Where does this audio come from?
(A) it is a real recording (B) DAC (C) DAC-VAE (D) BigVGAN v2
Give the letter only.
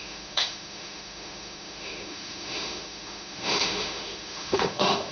C